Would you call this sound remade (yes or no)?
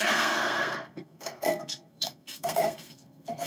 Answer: yes